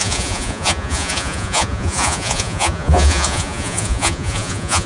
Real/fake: fake